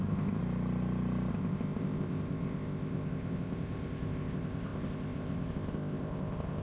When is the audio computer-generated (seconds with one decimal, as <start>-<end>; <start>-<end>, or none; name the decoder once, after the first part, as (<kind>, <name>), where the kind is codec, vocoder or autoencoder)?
0.0-0.4 (codec, ZipCodec); 1.3-6.6